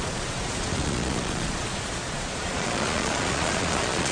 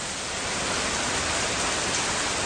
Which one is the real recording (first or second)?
second